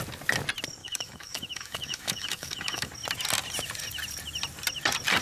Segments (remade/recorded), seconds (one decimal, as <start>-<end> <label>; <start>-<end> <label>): 0.0-0.8 recorded; 0.8-2.9 remade; 2.9-5.2 recorded